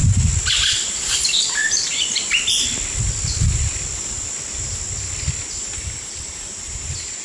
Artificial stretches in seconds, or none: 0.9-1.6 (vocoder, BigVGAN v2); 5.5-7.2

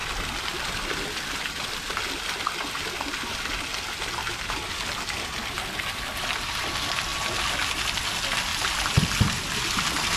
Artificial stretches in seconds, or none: none

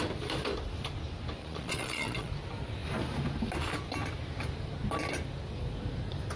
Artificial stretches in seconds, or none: 1.4-2.3 (vocoder, Vocos)

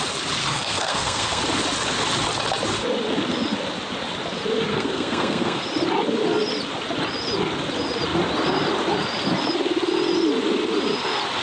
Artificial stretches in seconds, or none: 0.4-1.4 (codec, SNAC); 4.7-5.6

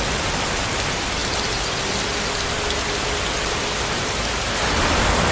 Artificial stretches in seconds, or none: none

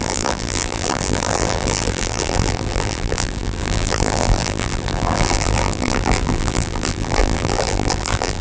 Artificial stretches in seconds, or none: 0.0-8.4 (vocoder, BigVGAN v2)

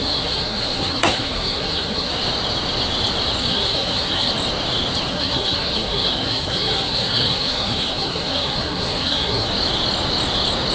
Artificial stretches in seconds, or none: 0.0-2.1 (codec, SNAC); 3.4-4.3; 5.1-9.5